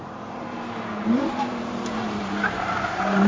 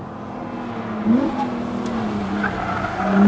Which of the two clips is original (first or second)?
second